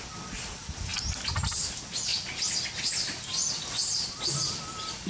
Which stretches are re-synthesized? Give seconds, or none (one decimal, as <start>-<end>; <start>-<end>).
none